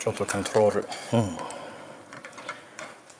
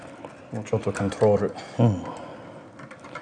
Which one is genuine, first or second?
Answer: second